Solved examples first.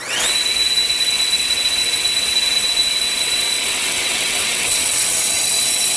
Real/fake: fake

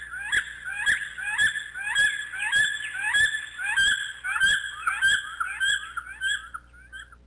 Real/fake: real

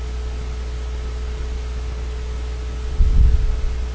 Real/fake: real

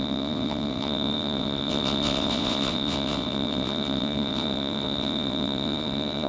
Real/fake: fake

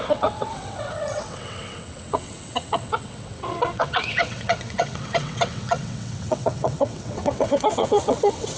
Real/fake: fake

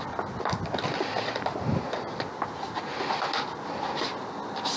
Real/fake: real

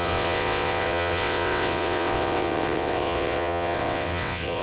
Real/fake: fake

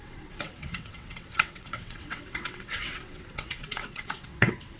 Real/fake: fake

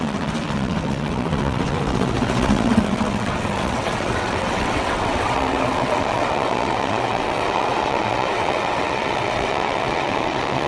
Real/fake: fake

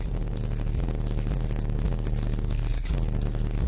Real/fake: real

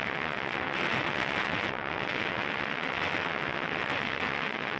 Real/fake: fake